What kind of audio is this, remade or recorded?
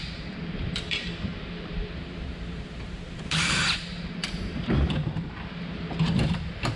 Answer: remade